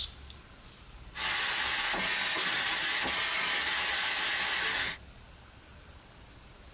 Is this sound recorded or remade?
recorded